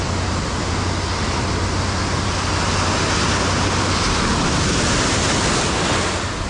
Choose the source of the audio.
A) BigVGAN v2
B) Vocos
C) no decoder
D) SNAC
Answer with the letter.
C